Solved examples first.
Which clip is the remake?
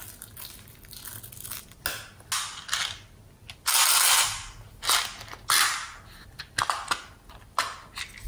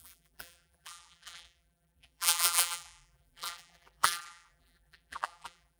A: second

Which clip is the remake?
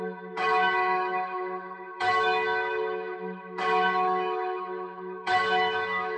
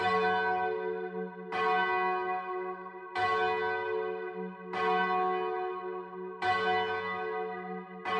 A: first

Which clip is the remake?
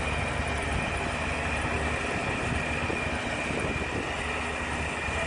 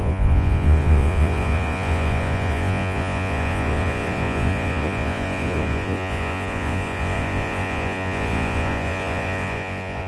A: second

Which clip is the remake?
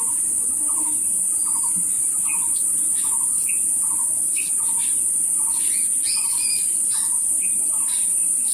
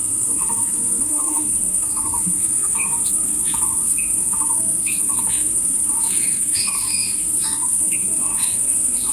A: second